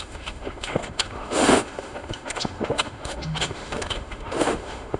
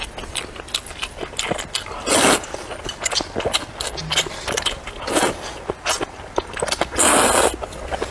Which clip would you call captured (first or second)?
second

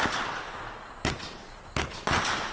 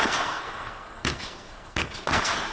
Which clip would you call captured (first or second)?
first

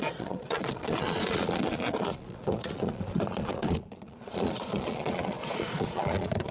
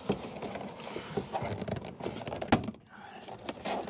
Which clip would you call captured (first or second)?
second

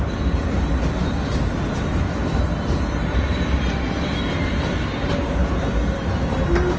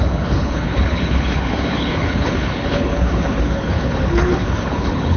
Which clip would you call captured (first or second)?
first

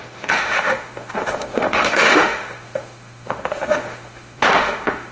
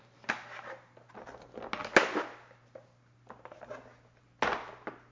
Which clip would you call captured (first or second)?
second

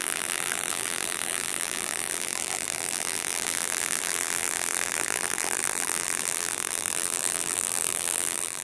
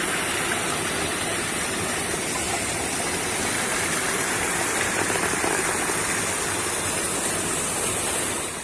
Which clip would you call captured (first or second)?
second